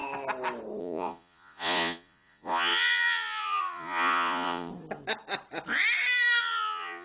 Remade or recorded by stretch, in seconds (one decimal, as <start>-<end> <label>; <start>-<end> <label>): 0.0-0.8 recorded; 0.8-4.7 remade; 4.7-6.4 recorded; 6.4-7.0 remade